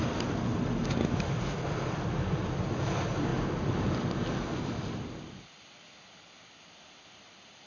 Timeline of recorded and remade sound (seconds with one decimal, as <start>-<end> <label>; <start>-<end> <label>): 0.0-7.7 recorded